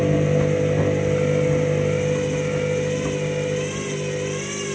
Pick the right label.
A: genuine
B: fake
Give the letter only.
A